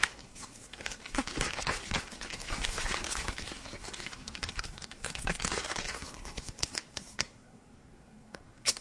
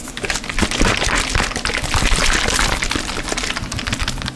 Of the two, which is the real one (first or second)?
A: second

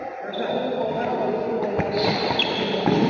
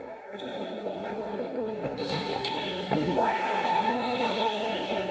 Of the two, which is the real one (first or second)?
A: first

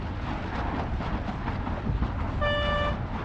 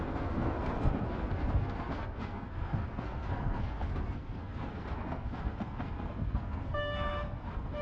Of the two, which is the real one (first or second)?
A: first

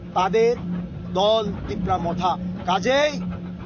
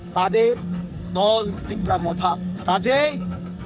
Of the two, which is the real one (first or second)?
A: first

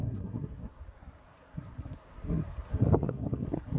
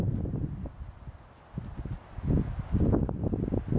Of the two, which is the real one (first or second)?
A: second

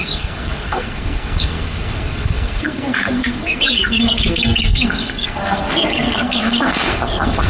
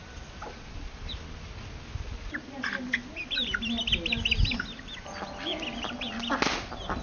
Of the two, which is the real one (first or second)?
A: second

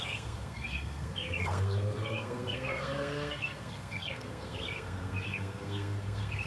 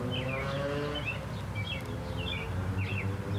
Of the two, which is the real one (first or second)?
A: second